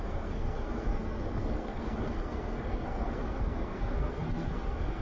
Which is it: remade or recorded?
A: remade